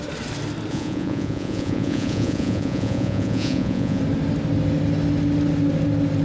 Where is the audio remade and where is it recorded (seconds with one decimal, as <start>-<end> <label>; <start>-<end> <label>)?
0.0-0.7 recorded; 0.7-4.0 remade; 4.0-6.2 recorded